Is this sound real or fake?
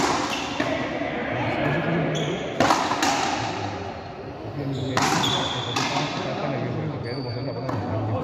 real